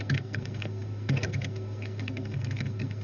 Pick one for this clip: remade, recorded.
remade